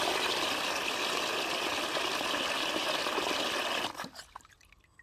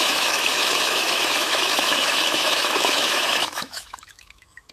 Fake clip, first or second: second